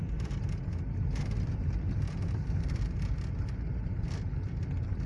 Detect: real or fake real